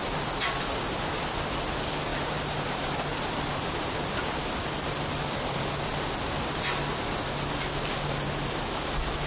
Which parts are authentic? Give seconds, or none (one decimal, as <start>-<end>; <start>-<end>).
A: 0.0-2.1; 5.6-9.3